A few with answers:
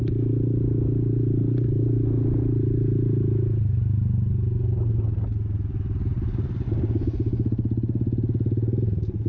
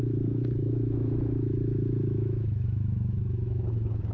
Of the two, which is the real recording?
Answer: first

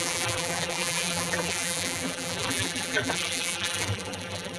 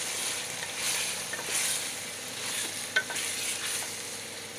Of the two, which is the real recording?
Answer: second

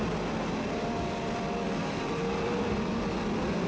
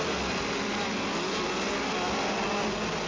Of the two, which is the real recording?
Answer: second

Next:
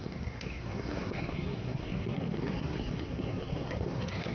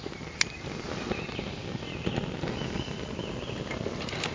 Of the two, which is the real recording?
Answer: second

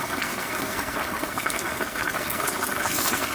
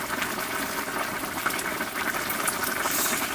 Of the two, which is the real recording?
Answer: second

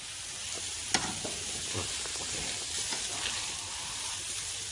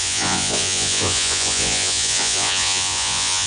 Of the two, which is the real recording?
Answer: first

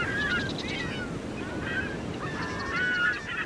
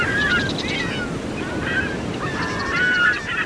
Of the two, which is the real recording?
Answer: first